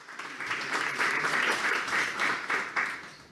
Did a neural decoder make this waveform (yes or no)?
yes